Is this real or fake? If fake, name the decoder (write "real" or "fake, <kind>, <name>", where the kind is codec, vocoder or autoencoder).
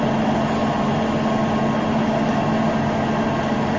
real